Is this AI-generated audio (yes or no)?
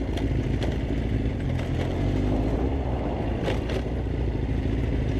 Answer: no